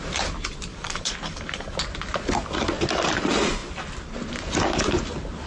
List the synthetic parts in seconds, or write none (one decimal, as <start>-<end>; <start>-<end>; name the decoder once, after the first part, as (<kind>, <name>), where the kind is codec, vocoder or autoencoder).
0.7-1.8 (codec, DAC)